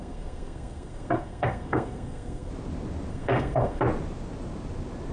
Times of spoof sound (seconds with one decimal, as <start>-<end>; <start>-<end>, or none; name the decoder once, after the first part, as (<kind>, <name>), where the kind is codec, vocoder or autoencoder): 0.0-2.5 (codec, SNAC); 3.1-3.8